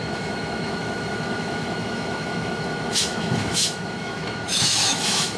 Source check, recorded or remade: remade